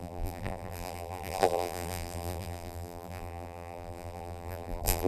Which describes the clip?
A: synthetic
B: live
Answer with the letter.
A